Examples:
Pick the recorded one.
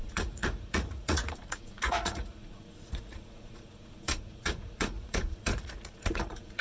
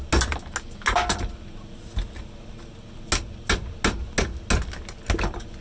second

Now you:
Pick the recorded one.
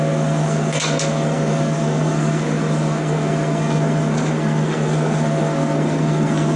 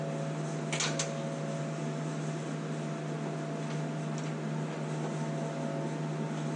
second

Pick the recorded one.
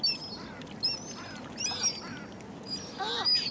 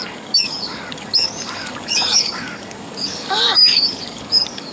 first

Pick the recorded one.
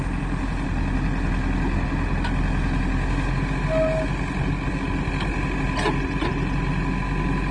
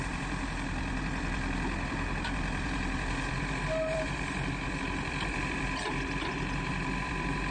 first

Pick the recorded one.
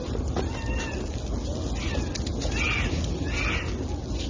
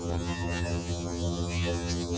first